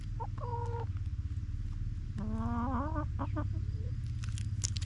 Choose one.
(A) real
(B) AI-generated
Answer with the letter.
A